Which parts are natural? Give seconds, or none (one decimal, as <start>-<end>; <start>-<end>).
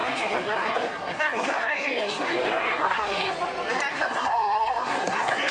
3.3-3.9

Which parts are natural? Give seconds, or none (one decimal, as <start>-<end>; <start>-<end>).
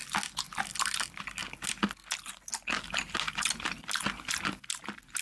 0.0-5.2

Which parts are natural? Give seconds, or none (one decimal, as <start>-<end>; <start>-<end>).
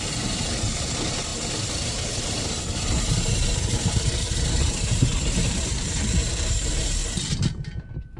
7.0-8.2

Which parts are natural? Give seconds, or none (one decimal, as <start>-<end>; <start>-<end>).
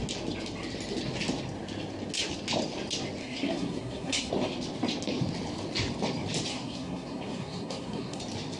0.0-3.2; 4.3-6.5; 8.2-8.6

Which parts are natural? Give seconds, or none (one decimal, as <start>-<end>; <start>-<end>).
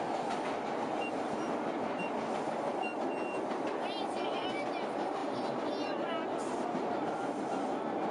0.0-8.1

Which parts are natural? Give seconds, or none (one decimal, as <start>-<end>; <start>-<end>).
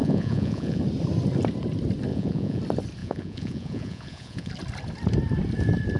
0.8-2.1; 2.6-3.0; 4.5-6.0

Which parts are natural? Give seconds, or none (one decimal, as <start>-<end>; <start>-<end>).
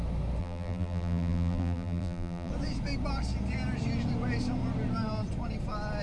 0.0-0.4; 2.5-6.0